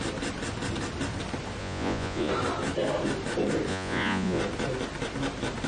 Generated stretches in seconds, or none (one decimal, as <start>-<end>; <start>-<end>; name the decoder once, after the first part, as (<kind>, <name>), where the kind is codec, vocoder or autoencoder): 1.6-2.3 (vocoder, Vocos); 3.7-4.4